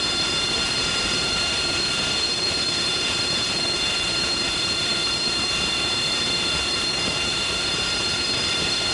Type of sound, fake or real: fake